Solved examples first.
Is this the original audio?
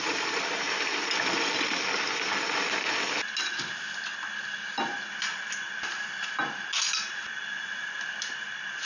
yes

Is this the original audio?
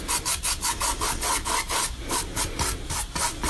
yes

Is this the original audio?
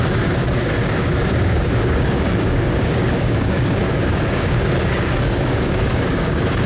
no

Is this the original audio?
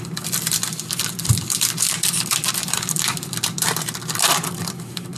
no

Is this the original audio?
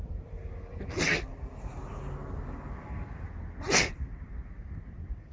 yes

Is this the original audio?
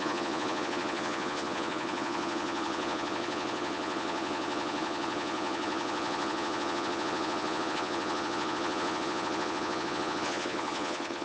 no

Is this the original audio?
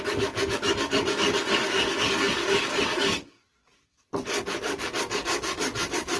no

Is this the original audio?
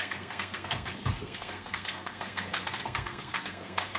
no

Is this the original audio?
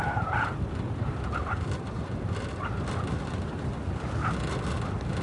yes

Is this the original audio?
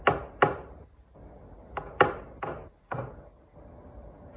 yes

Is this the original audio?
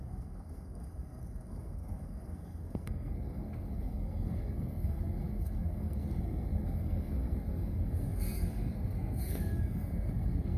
no